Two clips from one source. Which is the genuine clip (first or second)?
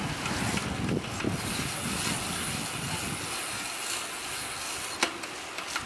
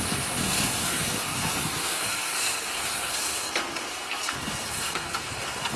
first